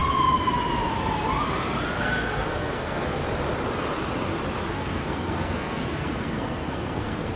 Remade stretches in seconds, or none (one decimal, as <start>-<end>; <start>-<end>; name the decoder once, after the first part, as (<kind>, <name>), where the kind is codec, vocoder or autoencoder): 2.0-3.2 (codec, SNAC); 4.7-7.4